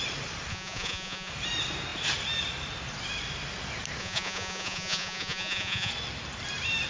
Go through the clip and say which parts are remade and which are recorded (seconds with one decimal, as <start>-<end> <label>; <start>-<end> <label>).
0.0-0.5 recorded; 0.5-1.3 remade; 1.3-4.0 recorded; 4.0-5.9 remade; 5.9-6.9 recorded